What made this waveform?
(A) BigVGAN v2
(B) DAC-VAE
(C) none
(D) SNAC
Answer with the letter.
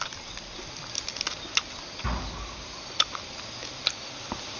C